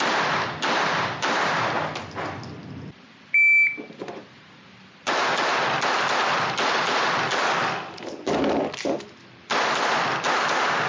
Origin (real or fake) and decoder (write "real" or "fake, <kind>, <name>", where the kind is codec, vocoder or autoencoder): real